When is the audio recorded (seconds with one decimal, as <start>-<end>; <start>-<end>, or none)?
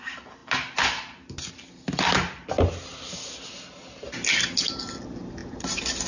0.0-6.1